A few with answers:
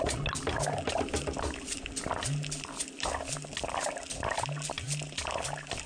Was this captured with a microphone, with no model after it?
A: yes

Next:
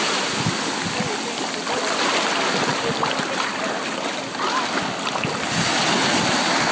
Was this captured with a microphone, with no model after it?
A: yes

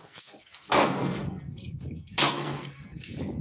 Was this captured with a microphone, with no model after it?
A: no